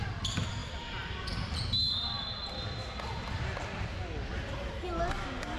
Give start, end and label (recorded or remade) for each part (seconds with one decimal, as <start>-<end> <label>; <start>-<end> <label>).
0.0-5.6 recorded